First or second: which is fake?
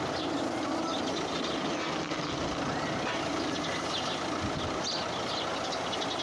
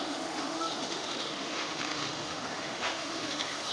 second